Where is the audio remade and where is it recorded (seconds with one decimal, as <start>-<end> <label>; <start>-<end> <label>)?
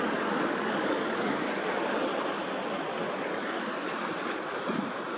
0.0-2.1 remade; 2.1-5.2 recorded